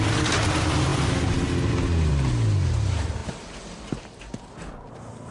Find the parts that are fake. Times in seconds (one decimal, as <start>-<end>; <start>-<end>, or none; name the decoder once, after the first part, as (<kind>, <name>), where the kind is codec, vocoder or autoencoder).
none